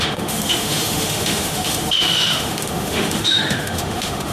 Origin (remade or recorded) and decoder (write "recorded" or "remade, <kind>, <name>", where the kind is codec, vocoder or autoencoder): remade, autoencoder, DAC-VAE